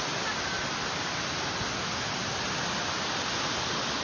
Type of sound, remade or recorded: recorded